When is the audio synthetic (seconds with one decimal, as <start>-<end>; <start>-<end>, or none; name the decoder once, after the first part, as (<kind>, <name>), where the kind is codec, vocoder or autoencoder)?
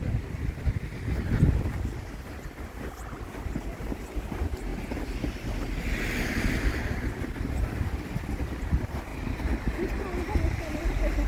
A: none